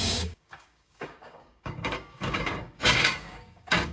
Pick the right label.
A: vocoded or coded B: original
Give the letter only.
A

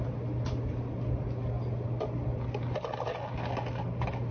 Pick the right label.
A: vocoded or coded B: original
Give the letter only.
B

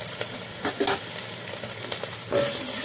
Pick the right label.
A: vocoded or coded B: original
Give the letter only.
B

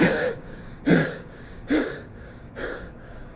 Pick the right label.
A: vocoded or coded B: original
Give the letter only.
A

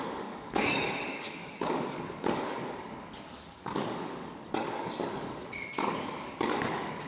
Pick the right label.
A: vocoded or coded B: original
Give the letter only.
A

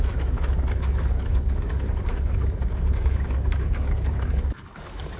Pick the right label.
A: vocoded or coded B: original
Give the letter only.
A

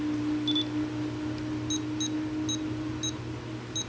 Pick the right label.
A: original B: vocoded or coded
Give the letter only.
A